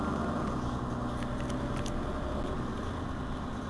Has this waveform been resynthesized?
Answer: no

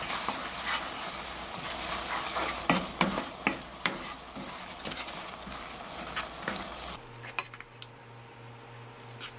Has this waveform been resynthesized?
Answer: no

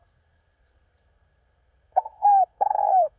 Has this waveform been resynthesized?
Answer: yes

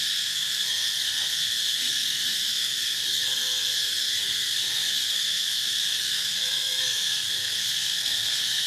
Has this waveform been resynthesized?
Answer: yes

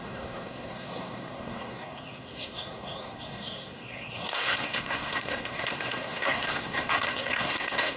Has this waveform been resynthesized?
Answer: yes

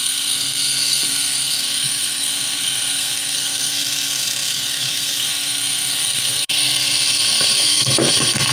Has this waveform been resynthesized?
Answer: yes